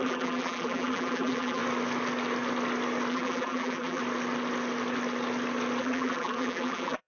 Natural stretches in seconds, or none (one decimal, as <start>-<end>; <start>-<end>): 1.6-3.1; 4.0-5.8